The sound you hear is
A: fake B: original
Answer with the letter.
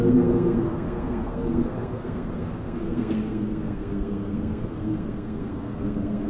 A